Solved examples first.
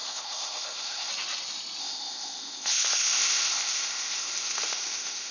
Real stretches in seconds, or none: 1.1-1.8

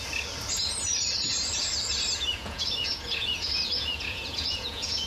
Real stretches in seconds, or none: 0.0-2.3

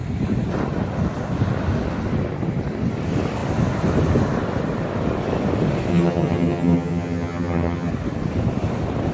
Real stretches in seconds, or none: 0.0-5.9; 7.9-9.1